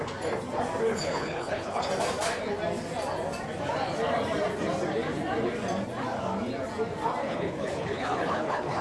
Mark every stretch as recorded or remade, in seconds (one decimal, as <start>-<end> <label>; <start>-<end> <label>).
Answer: 0.0-0.9 recorded; 0.9-1.9 remade; 1.9-7.2 recorded; 7.2-8.8 remade